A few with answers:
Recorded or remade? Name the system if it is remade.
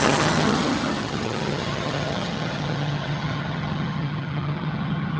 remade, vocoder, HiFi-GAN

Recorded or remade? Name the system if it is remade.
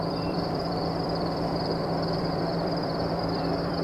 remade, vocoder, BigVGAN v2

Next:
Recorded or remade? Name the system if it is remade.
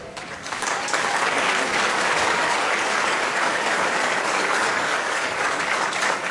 remade, codec, DAC